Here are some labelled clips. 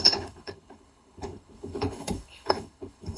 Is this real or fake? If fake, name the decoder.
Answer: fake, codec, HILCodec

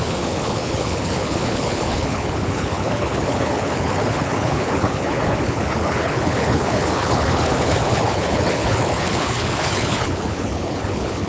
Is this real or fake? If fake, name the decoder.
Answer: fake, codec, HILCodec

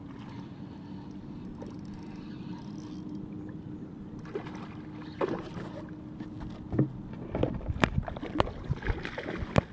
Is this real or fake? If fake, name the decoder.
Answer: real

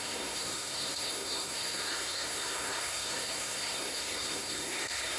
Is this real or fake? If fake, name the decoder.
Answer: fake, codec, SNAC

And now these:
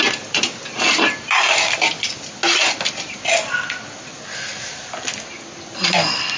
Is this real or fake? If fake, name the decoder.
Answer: real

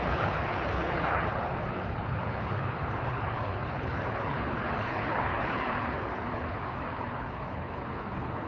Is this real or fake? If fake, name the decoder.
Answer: fake, codec, HILCodec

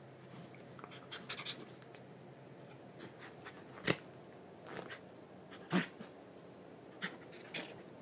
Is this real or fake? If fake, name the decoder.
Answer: real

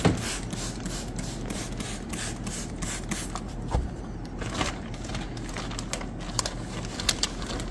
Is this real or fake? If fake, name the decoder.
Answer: real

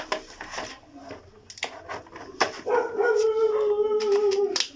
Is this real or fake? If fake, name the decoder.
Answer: real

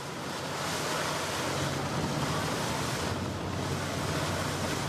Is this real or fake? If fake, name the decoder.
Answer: real